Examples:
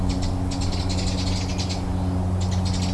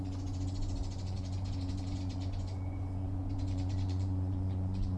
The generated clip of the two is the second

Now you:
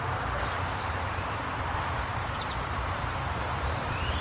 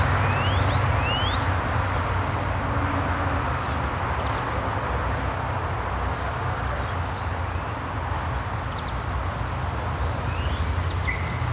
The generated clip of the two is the first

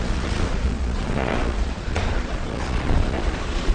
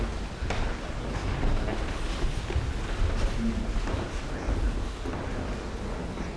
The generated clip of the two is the first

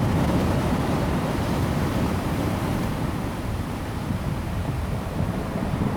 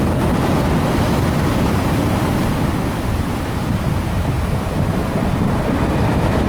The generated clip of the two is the first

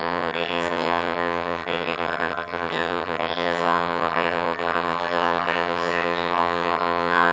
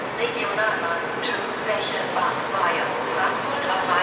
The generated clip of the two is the first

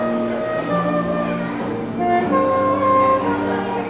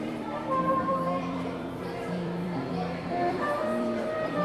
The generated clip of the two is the second